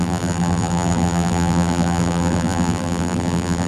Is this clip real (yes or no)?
no